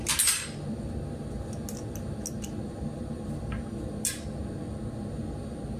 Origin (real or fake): real